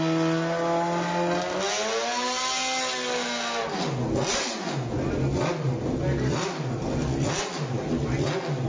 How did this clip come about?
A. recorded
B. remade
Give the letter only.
A